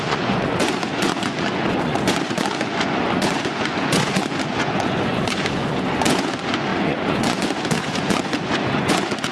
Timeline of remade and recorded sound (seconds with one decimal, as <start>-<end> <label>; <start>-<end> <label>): 0.0-9.3 remade